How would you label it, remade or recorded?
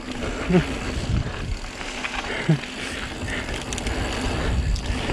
recorded